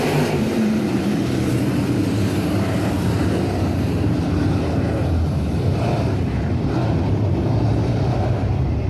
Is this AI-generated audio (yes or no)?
yes